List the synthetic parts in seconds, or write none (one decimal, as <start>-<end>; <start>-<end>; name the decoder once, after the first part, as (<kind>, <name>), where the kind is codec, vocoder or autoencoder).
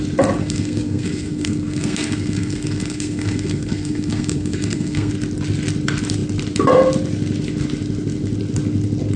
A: 0.4-5.1 (codec, SNAC)